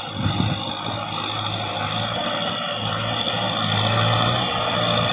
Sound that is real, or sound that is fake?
real